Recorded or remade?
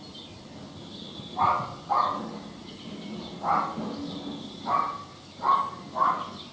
recorded